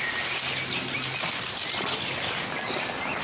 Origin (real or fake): real